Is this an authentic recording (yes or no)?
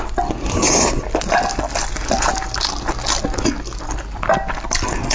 yes